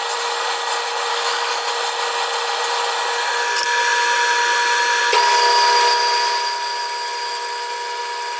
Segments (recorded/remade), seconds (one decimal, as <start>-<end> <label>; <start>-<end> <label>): 0.0-1.1 recorded; 1.1-1.7 remade; 1.7-8.4 recorded